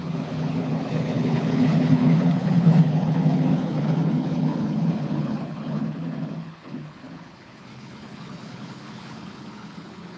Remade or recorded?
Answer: remade